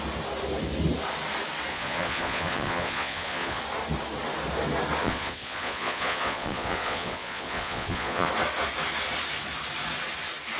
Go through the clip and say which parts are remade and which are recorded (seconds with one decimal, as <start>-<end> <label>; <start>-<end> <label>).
0.0-1.7 recorded; 1.7-3.6 remade; 3.6-5.0 recorded; 5.0-8.3 remade; 8.3-10.6 recorded